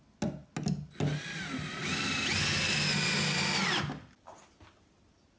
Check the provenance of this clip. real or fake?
real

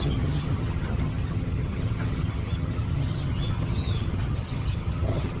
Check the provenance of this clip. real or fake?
fake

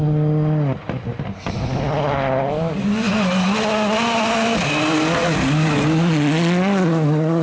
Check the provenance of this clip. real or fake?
real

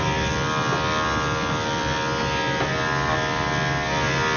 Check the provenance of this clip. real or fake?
real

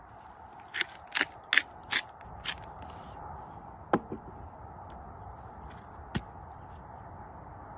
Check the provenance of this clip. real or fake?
real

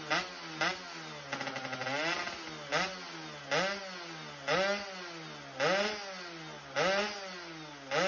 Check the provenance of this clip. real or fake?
real